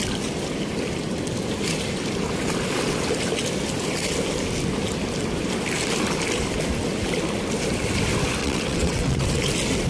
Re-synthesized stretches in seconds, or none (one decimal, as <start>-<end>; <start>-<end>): 8.4-9.4